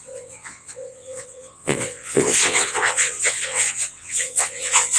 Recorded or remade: remade